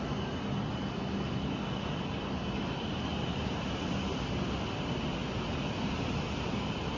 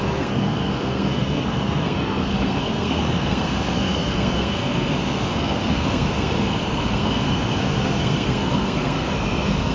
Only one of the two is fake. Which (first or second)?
second